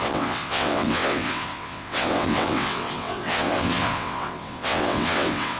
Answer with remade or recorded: remade